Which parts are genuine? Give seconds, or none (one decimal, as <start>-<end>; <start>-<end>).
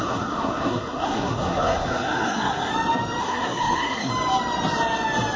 2.7-3.2; 4.1-5.4